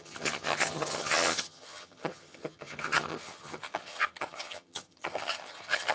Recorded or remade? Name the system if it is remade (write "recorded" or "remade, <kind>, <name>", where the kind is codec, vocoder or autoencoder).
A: remade, vocoder, HiFi-GAN